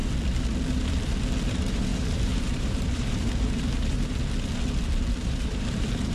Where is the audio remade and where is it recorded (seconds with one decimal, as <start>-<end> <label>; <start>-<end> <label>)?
0.0-1.5 recorded; 1.5-4.1 remade; 4.1-5.2 recorded; 5.2-6.1 remade